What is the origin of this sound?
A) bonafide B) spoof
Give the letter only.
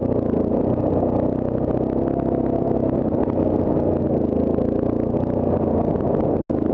A